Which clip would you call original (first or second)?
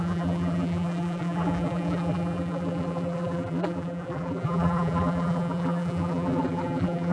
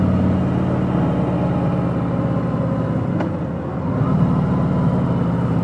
second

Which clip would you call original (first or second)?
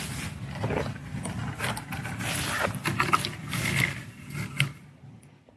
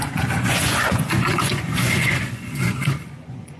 first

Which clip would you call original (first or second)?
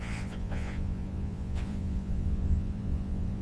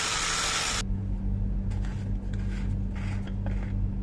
second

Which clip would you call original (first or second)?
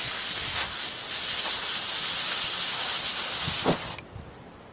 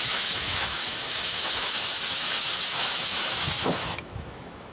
first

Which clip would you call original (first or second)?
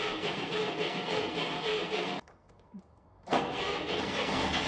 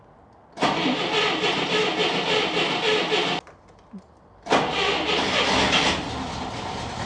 second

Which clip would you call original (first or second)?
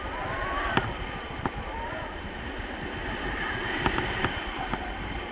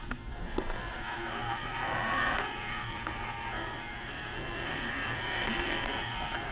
first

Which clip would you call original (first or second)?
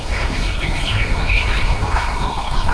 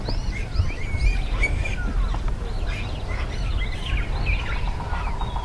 second